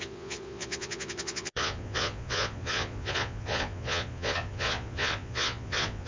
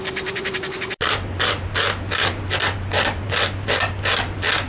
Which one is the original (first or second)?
second